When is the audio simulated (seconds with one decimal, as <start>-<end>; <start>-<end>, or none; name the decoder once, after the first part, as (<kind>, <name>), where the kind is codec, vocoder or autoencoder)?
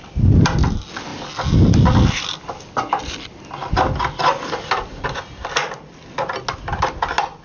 none